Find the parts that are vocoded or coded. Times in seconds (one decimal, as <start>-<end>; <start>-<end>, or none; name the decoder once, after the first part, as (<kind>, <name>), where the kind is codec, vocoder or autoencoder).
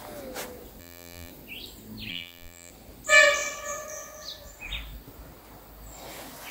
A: 0.8-1.3 (vocoder, BigVGAN v2); 2.1-2.7